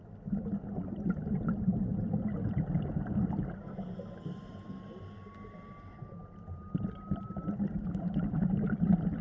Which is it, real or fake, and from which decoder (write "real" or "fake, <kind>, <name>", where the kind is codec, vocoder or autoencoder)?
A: real